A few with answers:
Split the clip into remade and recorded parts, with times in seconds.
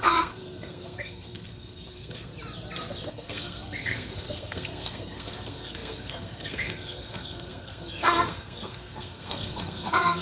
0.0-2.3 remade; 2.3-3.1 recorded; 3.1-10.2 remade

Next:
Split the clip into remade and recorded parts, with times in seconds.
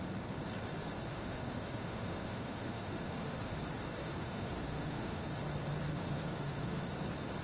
0.0-1.1 recorded; 1.1-3.6 remade; 3.6-4.0 recorded; 4.0-5.3 remade; 5.3-5.9 recorded; 5.9-6.9 remade; 6.9-7.4 recorded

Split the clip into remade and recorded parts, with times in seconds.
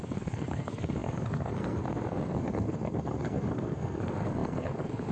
0.0-5.1 remade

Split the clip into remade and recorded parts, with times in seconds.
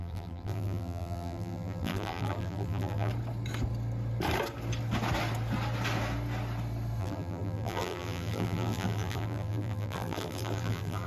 0.0-3.1 remade; 3.1-7.0 recorded; 7.0-11.1 remade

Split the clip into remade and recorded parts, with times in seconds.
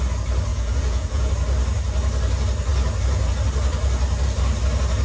0.0-0.5 recorded; 0.5-1.3 remade; 1.3-5.0 recorded